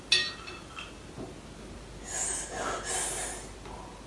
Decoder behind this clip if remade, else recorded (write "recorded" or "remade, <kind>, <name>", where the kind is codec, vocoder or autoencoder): recorded